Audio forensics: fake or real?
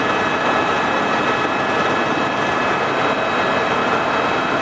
real